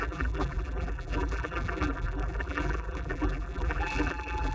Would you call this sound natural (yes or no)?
no